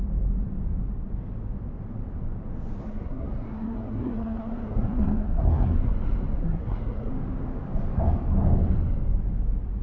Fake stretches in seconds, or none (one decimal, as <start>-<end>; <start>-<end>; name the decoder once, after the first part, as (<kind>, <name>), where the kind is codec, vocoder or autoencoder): 2.8-5.9 (codec, SNAC); 6.4-7.1